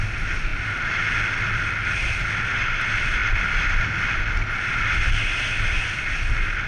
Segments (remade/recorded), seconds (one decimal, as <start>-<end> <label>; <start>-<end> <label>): 0.0-6.7 recorded